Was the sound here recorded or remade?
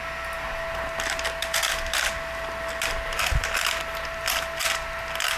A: recorded